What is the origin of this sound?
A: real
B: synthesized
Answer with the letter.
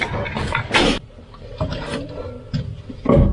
A